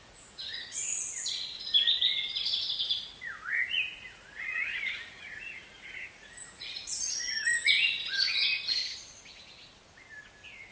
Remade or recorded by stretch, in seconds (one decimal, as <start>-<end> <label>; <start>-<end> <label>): 0.0-0.8 remade; 0.8-2.8 recorded; 2.8-8.8 remade; 8.8-10.7 recorded